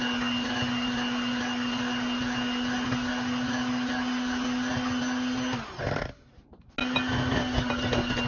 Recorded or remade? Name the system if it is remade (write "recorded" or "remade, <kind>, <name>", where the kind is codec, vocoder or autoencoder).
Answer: recorded